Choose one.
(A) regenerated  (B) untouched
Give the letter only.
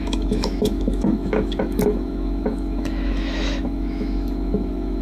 A